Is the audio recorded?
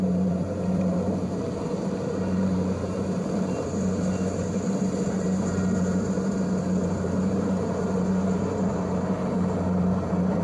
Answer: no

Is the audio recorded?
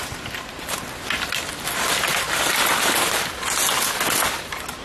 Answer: yes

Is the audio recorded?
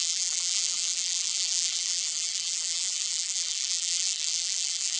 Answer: no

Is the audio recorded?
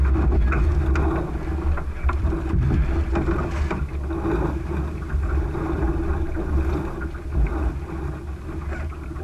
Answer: yes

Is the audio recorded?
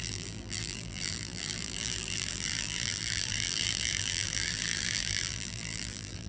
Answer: no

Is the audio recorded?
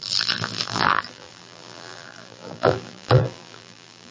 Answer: no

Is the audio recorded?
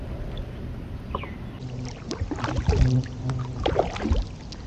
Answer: yes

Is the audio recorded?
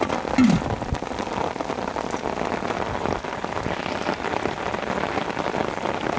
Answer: no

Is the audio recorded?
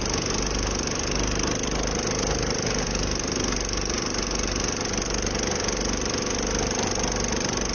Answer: no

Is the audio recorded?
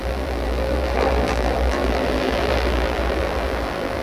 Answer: no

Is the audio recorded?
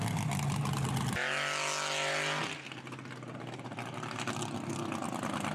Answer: yes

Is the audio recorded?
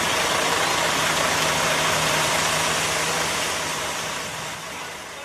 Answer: no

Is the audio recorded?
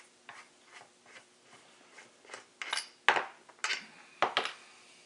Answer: yes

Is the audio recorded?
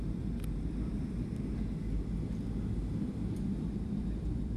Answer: no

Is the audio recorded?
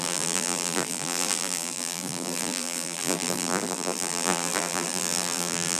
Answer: no